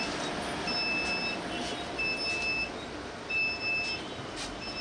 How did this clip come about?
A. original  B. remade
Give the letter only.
A